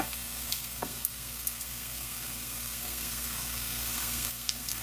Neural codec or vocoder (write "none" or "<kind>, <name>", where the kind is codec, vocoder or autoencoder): codec, SNAC